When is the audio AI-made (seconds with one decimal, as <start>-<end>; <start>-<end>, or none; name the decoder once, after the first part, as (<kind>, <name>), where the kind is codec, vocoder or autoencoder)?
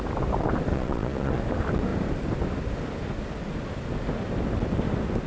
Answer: 0.7-1.4 (vocoder, Vocos)